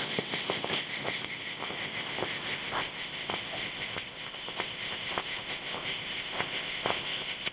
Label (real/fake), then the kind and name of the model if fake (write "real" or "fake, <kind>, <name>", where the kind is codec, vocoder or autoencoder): fake, codec, ZipCodec